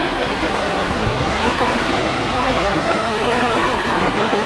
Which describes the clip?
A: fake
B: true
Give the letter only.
A